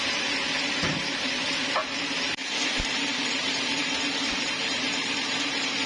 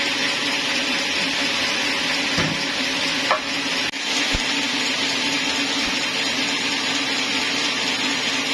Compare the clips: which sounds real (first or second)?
second